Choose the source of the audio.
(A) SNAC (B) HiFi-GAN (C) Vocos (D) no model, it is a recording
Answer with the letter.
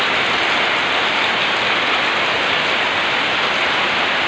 D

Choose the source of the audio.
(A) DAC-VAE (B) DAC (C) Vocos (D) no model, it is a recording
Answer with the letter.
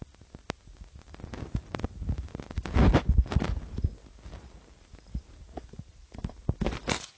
D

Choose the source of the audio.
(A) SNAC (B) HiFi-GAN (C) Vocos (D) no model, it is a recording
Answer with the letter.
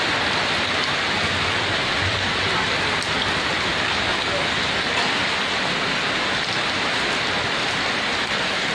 D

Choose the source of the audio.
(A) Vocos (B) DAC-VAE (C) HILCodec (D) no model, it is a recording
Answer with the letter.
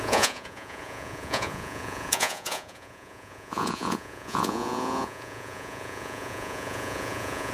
A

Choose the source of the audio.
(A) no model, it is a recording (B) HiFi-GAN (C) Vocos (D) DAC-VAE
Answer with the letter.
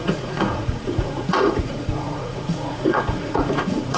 C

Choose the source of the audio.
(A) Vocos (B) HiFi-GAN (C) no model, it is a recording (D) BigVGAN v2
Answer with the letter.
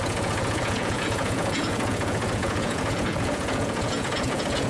A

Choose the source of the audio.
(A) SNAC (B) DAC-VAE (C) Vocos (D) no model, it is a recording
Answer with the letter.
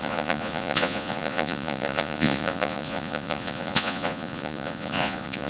C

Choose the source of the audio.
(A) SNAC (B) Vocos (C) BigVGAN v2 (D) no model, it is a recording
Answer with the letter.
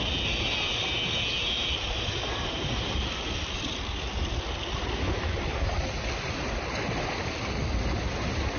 D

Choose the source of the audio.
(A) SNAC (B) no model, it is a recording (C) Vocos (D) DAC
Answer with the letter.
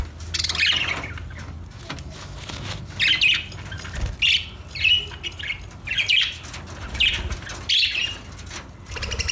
B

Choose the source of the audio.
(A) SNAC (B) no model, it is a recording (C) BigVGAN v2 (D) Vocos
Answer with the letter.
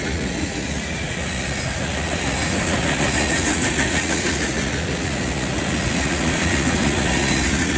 D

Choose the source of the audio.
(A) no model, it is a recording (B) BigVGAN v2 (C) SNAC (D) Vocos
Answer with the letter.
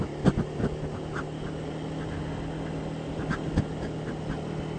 A